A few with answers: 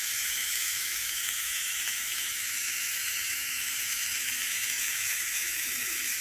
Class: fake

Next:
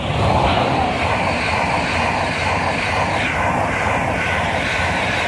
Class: real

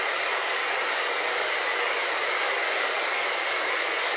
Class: fake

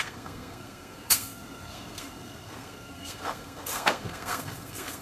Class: fake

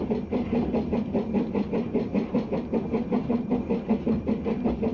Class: real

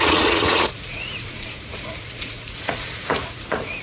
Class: fake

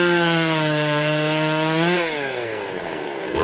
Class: fake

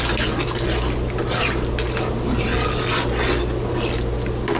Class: real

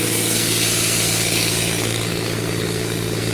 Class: fake